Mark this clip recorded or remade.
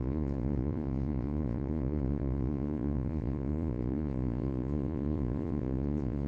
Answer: remade